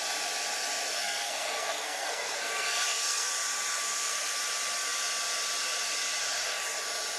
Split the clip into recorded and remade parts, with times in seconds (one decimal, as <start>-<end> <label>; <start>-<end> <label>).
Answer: 0.0-0.9 recorded; 0.9-3.3 remade; 3.3-3.7 recorded; 3.7-4.4 remade; 4.4-7.2 recorded